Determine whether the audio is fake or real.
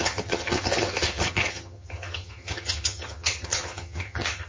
fake